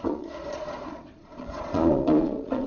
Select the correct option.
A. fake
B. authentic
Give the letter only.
A